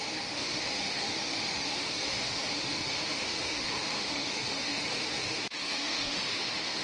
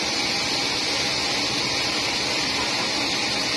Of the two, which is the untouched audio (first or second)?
second